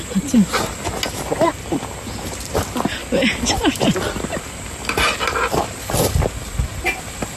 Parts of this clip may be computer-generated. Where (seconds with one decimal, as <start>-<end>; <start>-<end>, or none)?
1.5-2.5; 3.0-6.1